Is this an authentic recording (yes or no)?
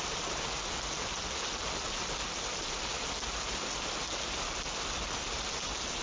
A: yes